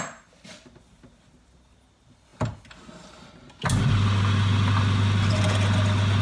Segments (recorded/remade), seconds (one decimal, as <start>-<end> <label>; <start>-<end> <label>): 0.0-6.2 recorded